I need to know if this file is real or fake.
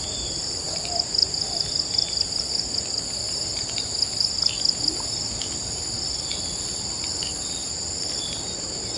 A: real